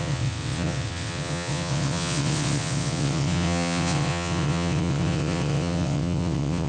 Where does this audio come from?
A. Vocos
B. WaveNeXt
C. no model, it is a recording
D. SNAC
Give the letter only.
B